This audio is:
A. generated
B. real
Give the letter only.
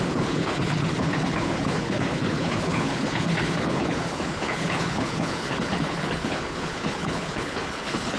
A